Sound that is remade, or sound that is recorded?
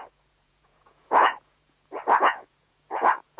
remade